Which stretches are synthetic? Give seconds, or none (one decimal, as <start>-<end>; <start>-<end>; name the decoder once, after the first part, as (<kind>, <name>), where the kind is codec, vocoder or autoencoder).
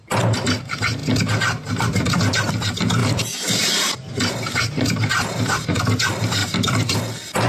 1.0-2.5 (vocoder, BigVGAN v2); 3.0-5.8; 6.4-7.0